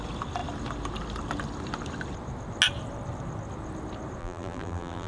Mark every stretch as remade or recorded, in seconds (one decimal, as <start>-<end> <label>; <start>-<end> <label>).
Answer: 0.0-4.2 recorded; 4.2-5.1 remade